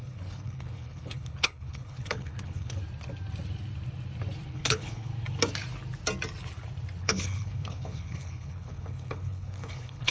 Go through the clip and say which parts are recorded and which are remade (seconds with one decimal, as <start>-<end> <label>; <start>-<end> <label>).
0.0-2.8 remade; 2.8-4.5 recorded; 4.5-5.1 remade; 5.1-7.0 recorded; 7.0-10.1 remade